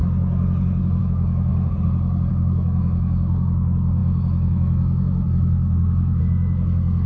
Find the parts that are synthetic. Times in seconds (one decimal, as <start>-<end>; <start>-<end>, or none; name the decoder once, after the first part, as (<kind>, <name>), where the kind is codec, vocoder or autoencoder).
1.0-1.5 (autoencoder, DAC-VAE); 2.3-7.1